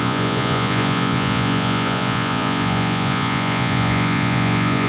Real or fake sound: fake